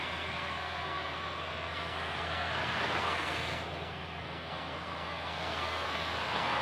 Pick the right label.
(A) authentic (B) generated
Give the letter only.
B